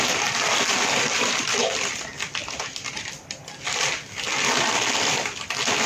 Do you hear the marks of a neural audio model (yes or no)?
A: no